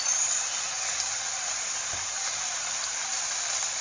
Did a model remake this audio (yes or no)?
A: no